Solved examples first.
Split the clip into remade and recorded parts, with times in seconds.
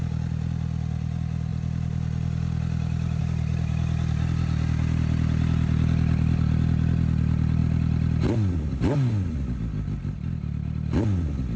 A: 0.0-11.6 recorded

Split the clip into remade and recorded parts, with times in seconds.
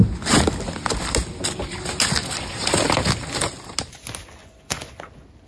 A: 0.0-4.4 recorded; 4.4-4.9 remade; 4.9-5.5 recorded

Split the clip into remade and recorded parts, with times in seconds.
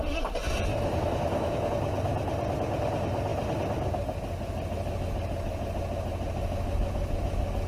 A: 0.0-0.7 recorded; 0.7-1.7 remade; 1.7-7.7 recorded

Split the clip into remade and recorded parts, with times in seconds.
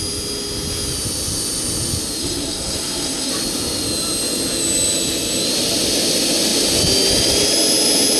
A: 0.0-2.2 recorded; 2.2-3.3 remade; 3.3-8.2 recorded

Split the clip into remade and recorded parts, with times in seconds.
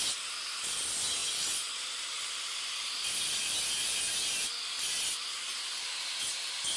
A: 0.0-6.8 recorded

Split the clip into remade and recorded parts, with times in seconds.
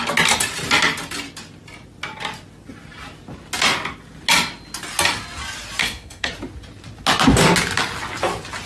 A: 0.0-5.8 recorded; 5.8-6.3 remade; 6.3-8.7 recorded